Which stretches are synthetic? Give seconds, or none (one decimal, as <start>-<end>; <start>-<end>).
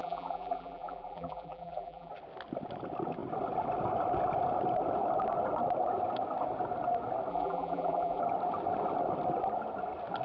0.0-2.1; 7.3-8.2